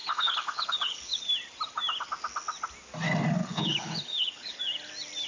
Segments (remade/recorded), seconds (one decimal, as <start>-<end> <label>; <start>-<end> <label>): 0.0-1.2 remade; 1.2-3.4 recorded; 3.4-4.6 remade; 4.6-5.3 recorded